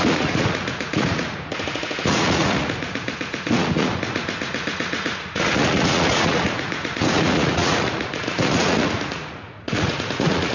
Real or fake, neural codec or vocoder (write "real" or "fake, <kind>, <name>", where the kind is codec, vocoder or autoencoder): fake, vocoder, Vocos